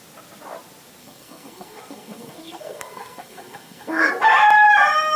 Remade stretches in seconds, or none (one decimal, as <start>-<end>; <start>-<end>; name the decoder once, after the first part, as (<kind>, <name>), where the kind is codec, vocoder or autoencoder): 1.0-4.1 (codec, SNAC)